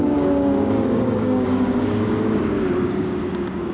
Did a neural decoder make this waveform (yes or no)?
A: yes